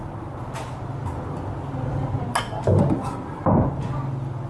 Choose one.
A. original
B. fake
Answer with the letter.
A